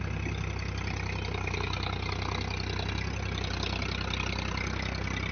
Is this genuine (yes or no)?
yes